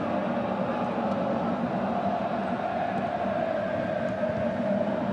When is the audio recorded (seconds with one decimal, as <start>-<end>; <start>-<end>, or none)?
0.0-5.1